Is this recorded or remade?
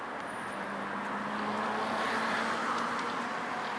recorded